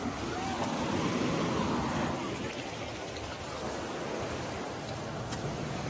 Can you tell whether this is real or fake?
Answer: real